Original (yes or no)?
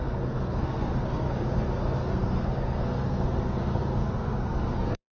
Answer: no